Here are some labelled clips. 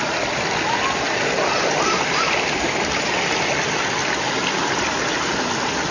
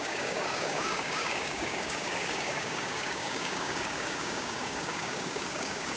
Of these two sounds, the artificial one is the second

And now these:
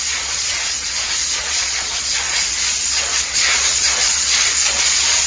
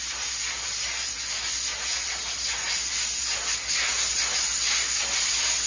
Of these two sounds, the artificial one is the first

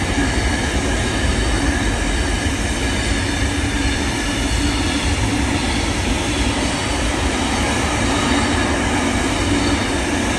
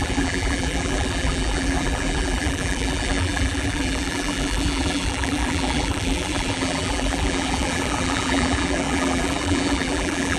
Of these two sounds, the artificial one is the second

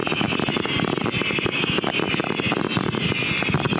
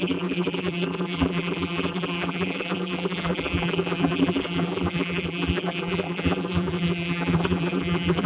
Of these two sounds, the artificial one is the second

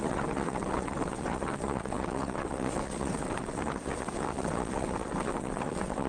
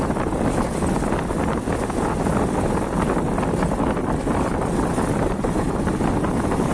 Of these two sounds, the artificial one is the first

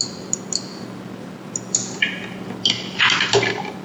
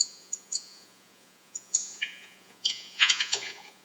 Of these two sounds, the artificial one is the second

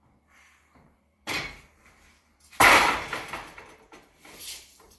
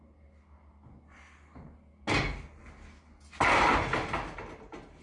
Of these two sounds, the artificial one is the first